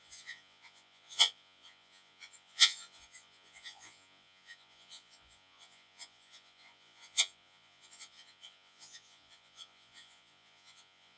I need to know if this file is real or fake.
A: fake